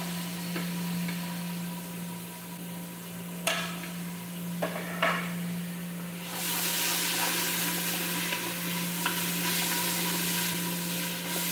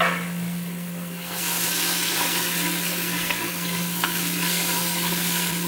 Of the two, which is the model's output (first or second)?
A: second